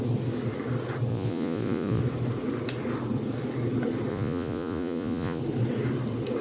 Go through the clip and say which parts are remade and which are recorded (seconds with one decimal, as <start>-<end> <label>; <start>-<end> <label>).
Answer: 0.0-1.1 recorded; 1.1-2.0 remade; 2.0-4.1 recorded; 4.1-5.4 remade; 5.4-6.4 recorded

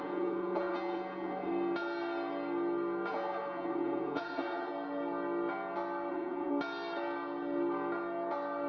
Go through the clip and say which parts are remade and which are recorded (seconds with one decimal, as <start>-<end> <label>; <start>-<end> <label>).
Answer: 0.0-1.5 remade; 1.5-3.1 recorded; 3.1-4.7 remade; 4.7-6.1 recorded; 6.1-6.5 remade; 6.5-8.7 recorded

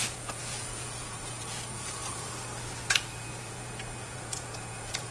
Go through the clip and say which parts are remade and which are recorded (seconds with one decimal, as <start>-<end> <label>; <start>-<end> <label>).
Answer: 0.0-2.0 remade; 2.0-2.9 recorded; 2.9-5.1 remade

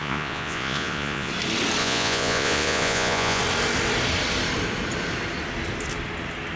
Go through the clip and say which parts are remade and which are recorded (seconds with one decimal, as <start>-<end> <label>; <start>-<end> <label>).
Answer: 0.0-1.3 remade; 1.3-1.8 recorded; 1.8-3.4 remade; 3.4-6.6 recorded